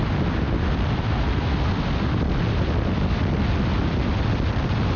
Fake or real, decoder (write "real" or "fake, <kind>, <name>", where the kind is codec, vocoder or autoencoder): real